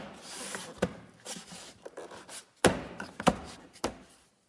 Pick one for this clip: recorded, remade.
recorded